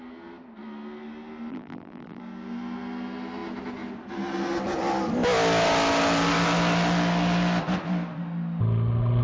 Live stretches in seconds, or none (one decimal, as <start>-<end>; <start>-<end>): 0.0-1.5; 2.2-9.2